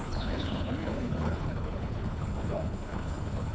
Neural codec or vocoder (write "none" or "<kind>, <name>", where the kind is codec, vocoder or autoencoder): codec, HILCodec